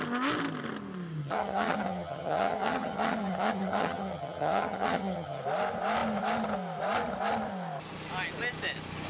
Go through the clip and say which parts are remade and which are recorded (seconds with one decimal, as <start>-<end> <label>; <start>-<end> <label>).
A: 0.0-1.2 recorded; 1.2-5.4 remade; 5.4-9.1 recorded